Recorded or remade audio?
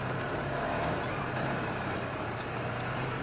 remade